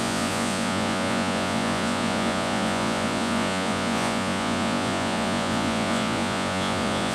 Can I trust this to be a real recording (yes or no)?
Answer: no